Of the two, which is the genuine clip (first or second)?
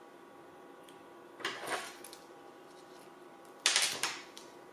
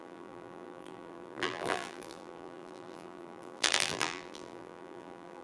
first